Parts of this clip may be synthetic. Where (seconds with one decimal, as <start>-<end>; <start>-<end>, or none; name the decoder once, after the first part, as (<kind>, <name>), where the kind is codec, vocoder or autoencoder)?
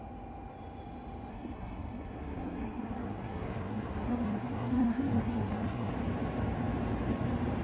1.3-5.9 (codec, SNAC)